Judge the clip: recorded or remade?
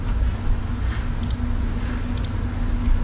recorded